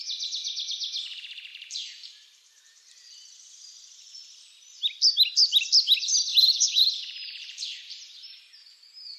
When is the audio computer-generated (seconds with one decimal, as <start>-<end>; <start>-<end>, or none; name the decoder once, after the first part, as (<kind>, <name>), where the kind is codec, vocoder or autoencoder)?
1.5-2.6 (vocoder, BigVGAN v2); 6.3-8.5